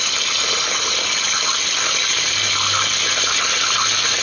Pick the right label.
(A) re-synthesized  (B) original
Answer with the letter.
B